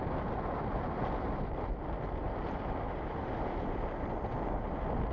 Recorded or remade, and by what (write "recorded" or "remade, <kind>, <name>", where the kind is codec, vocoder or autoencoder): recorded